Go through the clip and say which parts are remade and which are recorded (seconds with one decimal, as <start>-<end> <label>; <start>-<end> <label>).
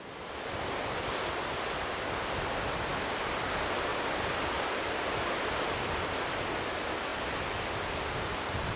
0.0-8.8 recorded